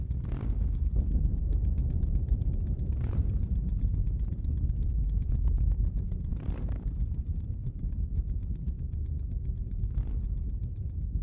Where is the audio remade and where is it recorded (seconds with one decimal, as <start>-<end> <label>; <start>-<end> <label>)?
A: 0.0-1.3 recorded; 1.3-3.6 remade; 3.6-4.9 recorded; 4.9-8.7 remade; 8.7-11.2 recorded